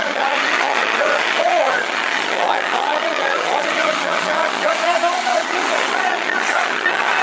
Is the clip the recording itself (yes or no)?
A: no